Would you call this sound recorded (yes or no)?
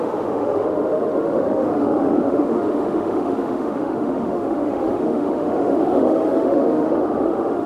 no